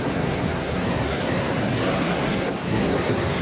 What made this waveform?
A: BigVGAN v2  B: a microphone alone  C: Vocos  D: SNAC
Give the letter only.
D